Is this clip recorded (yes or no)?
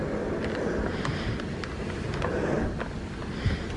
yes